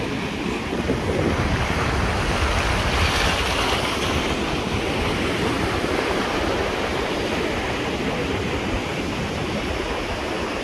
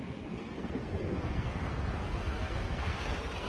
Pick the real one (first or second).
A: first